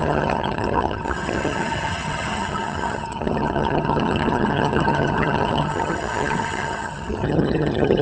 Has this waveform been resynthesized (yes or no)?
yes